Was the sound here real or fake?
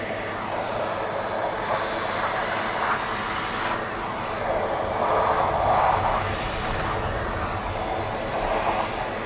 real